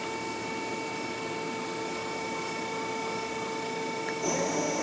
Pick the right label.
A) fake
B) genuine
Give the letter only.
B